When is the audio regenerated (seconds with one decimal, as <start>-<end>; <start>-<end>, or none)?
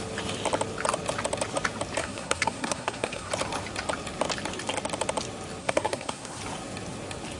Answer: 2.0-3.3; 5.6-6.4